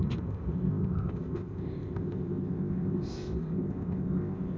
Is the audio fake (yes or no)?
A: yes